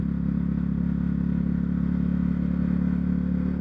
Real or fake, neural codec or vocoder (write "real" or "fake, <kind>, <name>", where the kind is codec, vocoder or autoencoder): real